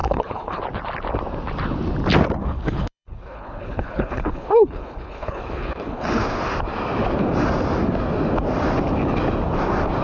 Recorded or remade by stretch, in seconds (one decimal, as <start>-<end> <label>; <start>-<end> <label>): 0.0-0.6 remade; 0.6-2.4 recorded; 2.4-6.2 remade; 6.2-10.0 recorded